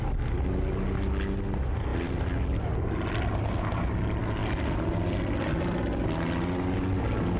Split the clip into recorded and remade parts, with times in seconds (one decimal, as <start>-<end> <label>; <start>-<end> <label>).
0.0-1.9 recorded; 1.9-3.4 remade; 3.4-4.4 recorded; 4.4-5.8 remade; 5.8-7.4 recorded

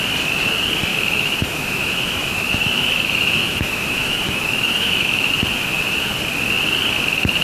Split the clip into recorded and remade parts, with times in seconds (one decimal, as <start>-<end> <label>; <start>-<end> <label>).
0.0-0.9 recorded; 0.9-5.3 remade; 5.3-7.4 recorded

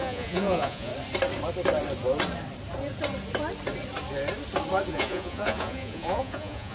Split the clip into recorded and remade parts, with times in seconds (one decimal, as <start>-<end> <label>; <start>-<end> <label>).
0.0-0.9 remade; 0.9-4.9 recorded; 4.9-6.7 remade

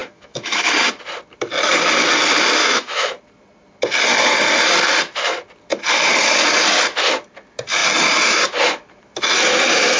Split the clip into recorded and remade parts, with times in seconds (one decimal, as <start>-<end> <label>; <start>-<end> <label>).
0.0-0.7 remade; 0.7-2.6 recorded; 2.6-3.2 remade; 3.2-10.0 recorded

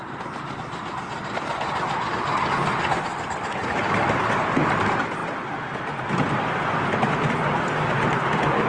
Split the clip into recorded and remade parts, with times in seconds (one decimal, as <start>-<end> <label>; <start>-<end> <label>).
0.0-8.7 recorded